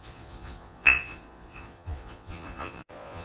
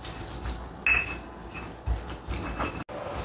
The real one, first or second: second